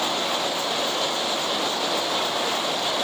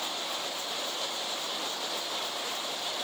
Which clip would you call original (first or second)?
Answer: first